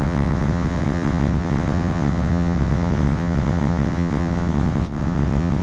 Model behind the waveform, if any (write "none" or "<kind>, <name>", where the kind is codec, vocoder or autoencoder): vocoder, WaveNeXt